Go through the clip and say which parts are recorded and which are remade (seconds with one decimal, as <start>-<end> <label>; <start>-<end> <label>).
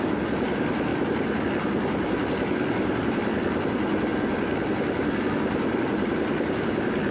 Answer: 0.0-7.1 recorded